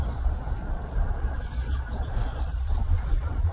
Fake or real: fake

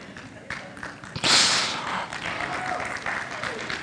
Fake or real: real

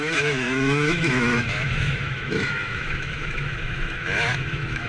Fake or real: fake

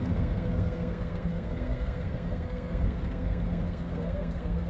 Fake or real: fake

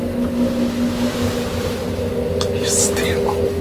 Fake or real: real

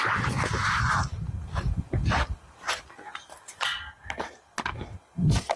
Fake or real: real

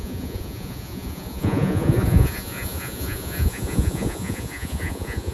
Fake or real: fake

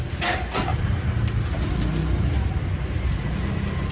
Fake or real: real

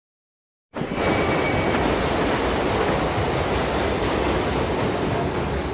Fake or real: real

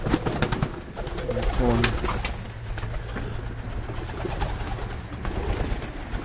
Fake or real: real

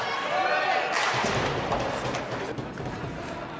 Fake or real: real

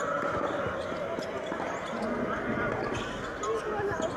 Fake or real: real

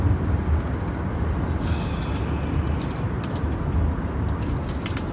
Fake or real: real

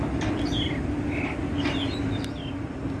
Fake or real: real